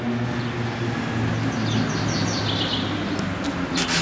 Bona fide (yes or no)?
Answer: yes